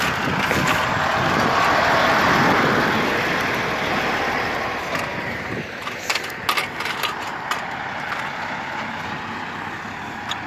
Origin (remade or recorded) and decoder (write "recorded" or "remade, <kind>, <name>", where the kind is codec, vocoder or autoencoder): recorded